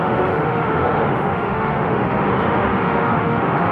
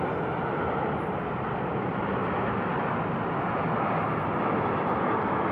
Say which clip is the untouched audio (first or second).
second